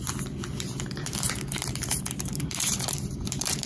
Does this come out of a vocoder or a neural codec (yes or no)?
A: yes